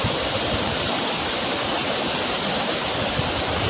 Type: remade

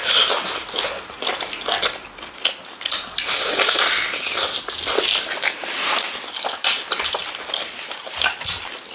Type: recorded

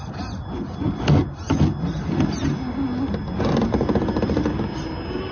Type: recorded